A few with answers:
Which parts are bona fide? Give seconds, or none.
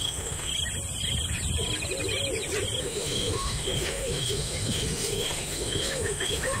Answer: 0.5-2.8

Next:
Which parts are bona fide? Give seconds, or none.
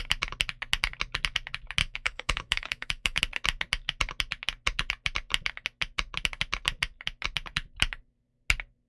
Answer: 0.0-1.8; 3.2-8.9